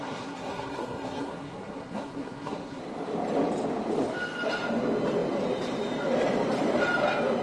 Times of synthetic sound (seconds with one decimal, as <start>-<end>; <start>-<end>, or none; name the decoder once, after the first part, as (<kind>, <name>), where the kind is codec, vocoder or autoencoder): 0.0-2.8 (codec, SNAC)